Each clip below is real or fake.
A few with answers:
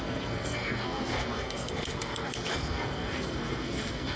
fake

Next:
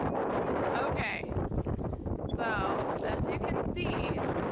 real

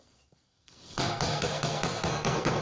fake